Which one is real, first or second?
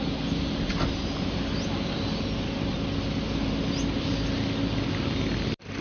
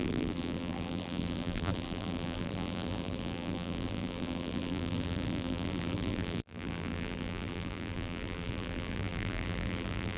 first